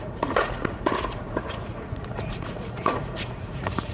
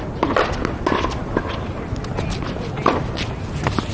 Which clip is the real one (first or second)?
second